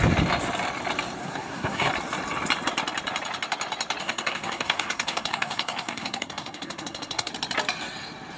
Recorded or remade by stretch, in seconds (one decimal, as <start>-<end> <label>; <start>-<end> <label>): 0.0-1.2 recorded; 1.2-1.9 remade; 1.9-4.0 recorded; 4.0-7.3 remade; 7.3-8.4 recorded